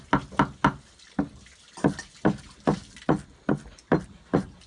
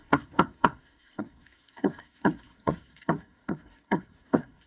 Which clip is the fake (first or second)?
second